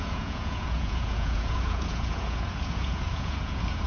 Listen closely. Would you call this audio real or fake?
fake